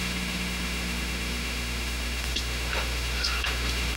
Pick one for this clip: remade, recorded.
remade